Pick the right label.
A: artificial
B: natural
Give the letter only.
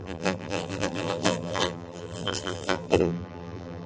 A